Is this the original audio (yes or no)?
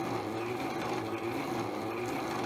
yes